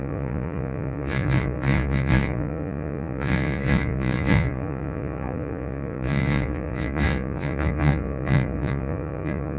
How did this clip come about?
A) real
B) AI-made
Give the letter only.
B